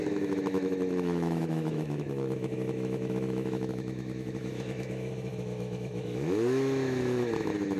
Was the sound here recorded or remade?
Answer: remade